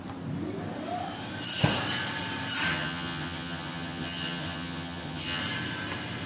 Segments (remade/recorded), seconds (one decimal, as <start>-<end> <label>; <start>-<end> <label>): 0.0-2.7 recorded; 2.7-5.4 remade; 5.4-6.3 recorded